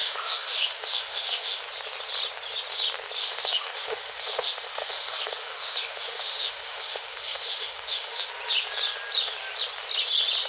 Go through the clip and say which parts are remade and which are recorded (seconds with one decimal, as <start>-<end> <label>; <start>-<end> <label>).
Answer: 0.0-1.6 remade; 1.6-3.2 recorded; 3.2-8.3 remade; 8.3-10.5 recorded